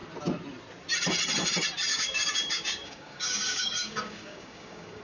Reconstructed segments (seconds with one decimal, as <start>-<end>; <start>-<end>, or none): 1.9-5.0